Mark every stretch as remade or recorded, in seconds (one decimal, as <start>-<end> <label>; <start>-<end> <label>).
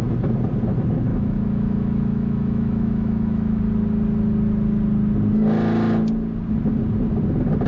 0.0-1.1 recorded; 1.1-3.6 remade; 3.6-7.7 recorded